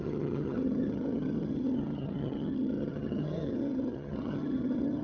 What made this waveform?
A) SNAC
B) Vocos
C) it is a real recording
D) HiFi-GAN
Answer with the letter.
D